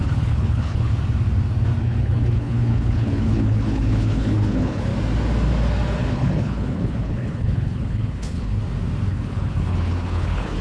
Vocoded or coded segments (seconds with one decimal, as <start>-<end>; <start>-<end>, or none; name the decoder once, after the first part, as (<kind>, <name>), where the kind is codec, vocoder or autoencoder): 0.0-0.9 (codec, HILCodec); 1.8-4.9; 6.1-8.6; 9.1-10.6